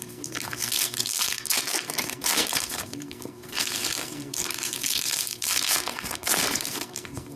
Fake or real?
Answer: fake